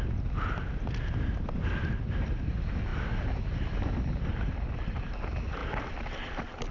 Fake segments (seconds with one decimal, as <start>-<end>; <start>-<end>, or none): none